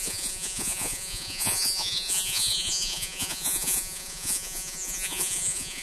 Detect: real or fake fake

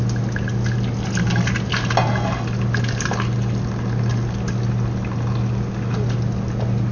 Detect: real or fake real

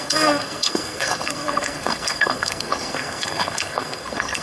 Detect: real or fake fake